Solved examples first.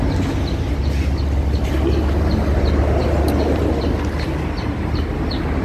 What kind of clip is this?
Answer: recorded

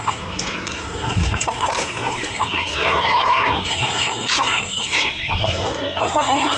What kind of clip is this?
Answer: remade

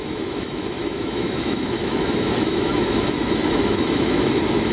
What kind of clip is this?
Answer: remade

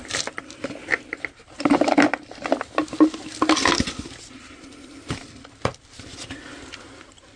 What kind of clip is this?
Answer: recorded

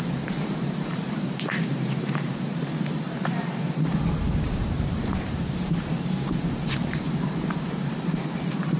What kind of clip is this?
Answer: remade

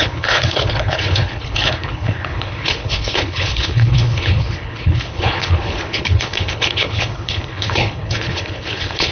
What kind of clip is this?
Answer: remade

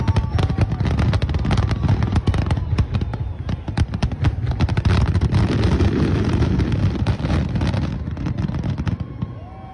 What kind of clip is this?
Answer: recorded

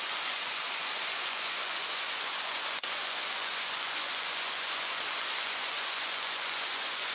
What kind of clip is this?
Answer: remade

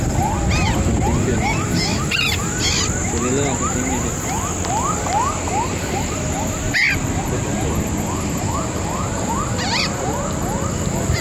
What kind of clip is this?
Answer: recorded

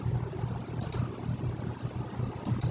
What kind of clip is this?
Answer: recorded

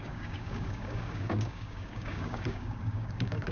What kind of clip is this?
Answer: remade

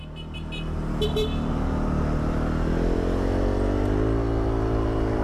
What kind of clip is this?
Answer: recorded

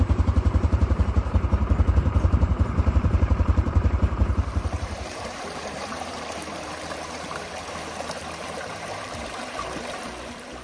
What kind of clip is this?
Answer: remade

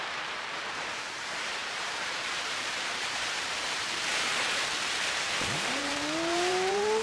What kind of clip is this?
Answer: remade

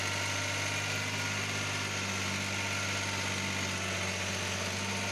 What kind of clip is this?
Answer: recorded